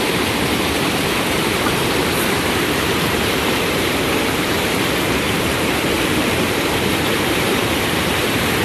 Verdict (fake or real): fake